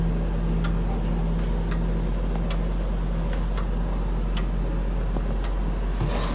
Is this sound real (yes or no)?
yes